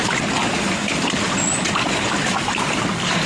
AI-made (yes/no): no